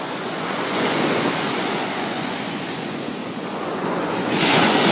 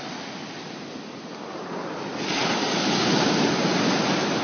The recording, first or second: second